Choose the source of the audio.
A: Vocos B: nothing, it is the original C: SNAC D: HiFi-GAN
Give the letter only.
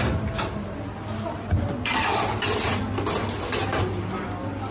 B